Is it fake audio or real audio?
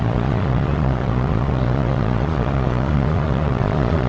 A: fake